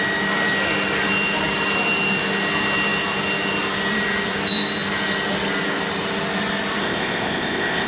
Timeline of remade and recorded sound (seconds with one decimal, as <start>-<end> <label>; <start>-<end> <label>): 0.0-6.8 recorded; 6.8-7.9 remade